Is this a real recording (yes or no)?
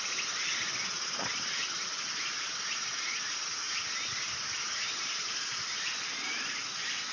yes